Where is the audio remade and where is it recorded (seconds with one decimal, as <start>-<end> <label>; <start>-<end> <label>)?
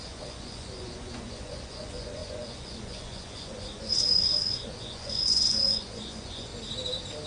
0.0-6.5 remade; 6.5-7.3 recorded